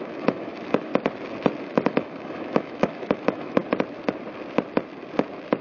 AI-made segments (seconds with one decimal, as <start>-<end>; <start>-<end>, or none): 0.0-0.9; 1.6-3.6